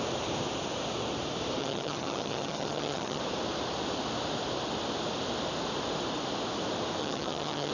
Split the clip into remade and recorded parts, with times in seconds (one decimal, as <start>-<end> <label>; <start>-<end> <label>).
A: 0.0-1.6 recorded; 1.6-3.2 remade; 3.2-7.0 recorded; 7.0-7.7 remade